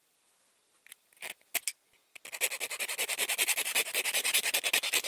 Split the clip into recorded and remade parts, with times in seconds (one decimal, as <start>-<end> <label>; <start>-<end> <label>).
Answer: 0.0-5.1 recorded